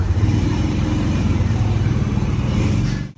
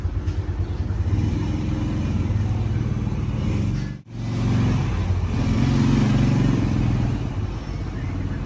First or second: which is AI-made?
first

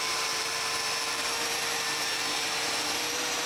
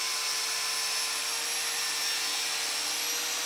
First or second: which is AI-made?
first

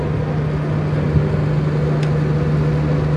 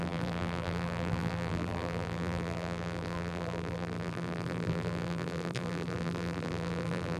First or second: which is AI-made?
second